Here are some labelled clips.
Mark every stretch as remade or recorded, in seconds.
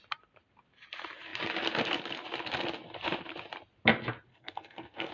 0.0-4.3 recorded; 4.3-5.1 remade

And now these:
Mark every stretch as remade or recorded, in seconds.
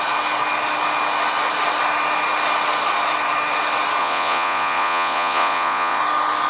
0.0-4.0 recorded; 4.0-6.0 remade; 6.0-6.5 recorded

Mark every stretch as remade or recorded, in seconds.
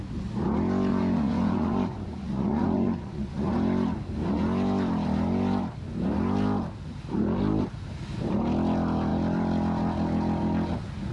0.0-0.9 recorded; 0.9-3.5 remade; 3.5-11.1 recorded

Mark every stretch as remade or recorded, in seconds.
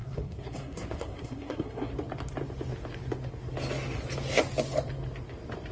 0.0-1.9 remade; 1.9-5.7 recorded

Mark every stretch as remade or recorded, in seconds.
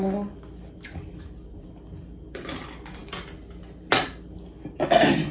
0.0-5.3 recorded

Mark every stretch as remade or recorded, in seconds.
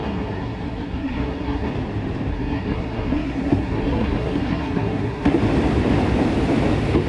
0.0-1.7 remade; 1.7-2.3 recorded; 2.3-5.4 remade; 5.4-7.1 recorded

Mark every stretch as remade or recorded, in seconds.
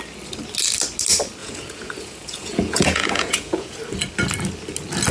0.0-1.4 recorded; 1.4-3.8 remade; 3.8-5.1 recorded